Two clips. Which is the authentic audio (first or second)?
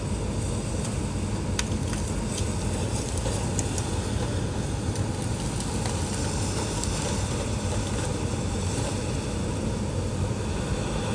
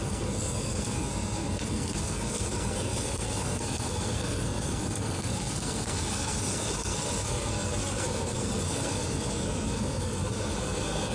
first